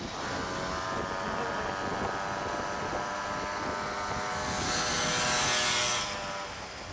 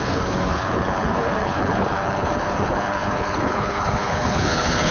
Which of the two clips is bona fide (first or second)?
first